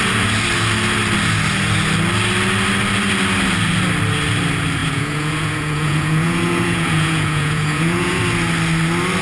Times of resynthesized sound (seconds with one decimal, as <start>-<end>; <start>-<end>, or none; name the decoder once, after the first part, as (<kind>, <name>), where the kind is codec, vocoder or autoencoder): 4.8-8.2 (vocoder, Vocos)